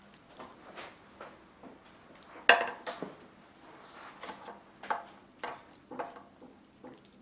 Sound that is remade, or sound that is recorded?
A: recorded